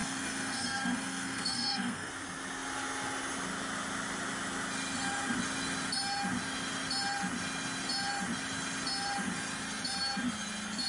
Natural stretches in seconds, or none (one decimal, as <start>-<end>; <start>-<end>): 2.1-10.9